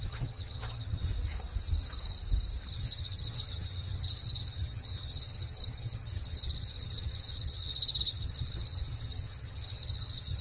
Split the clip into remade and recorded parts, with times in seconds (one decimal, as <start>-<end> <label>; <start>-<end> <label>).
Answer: 0.0-1.1 remade; 1.1-2.7 recorded; 2.7-10.4 remade